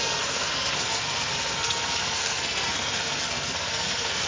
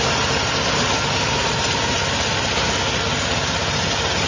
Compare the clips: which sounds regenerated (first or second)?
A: first